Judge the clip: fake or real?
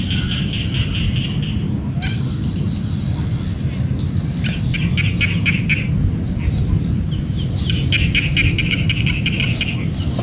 real